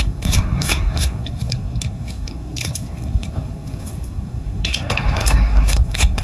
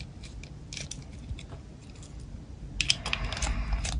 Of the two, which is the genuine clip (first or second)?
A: second